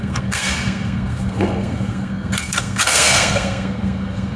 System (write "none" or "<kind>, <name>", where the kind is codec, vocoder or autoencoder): codec, SNAC